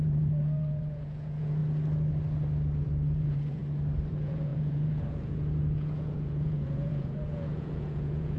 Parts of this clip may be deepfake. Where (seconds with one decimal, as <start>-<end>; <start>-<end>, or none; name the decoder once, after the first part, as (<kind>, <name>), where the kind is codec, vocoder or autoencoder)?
0.0-1.6 (vocoder, Vocos); 2.8-3.6; 4.1-8.4